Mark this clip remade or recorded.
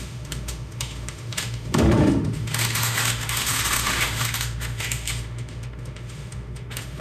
remade